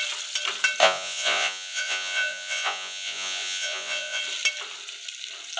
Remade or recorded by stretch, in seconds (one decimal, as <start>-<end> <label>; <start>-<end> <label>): 0.0-0.8 recorded; 0.8-4.2 remade; 4.2-5.6 recorded